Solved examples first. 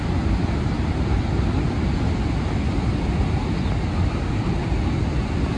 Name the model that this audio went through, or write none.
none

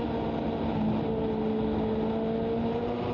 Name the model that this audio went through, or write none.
none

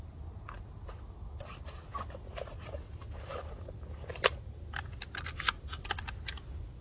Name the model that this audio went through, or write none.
none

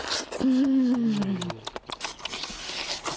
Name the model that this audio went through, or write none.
none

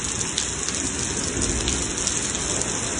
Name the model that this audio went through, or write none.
none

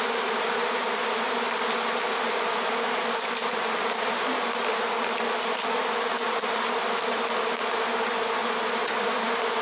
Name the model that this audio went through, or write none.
none